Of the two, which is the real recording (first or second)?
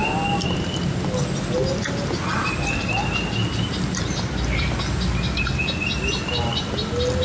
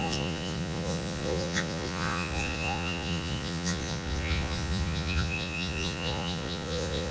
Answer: first